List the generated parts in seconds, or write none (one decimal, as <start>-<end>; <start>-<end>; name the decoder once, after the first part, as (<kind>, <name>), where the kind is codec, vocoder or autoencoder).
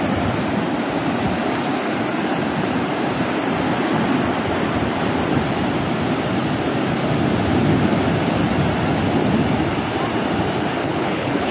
10.8-11.5 (codec, HILCodec)